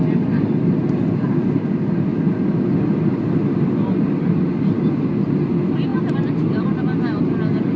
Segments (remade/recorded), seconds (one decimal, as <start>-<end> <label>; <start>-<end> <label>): 0.0-7.8 recorded